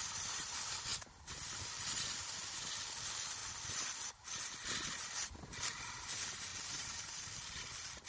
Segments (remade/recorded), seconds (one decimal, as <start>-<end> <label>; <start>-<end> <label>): 0.0-0.5 remade; 0.5-6.5 recorded; 6.5-7.3 remade; 7.3-8.1 recorded